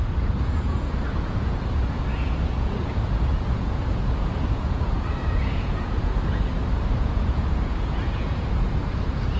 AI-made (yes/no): yes